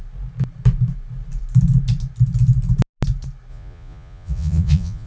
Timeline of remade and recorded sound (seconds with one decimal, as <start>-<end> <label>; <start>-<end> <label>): 0.0-3.5 recorded; 3.5-5.1 remade